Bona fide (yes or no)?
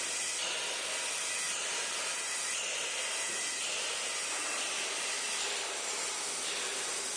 yes